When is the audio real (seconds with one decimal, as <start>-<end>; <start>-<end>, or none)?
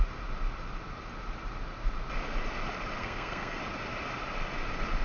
0.0-3.0; 3.6-5.0